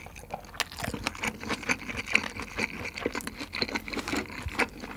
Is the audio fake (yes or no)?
no